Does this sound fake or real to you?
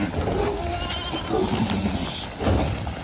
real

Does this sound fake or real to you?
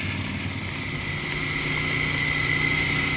real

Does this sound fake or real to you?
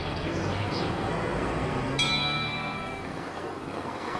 fake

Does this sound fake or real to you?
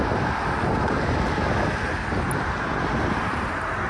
real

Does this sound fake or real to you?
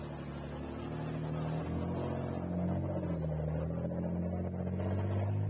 real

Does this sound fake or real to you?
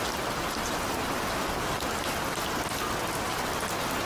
real